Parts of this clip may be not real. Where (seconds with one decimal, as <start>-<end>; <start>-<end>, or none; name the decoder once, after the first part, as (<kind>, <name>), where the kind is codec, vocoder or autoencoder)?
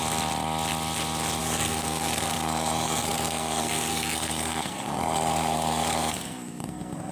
1.4-7.1 (codec, SNAC)